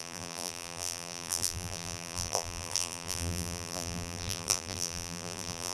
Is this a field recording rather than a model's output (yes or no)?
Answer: no